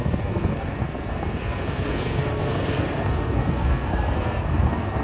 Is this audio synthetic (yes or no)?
yes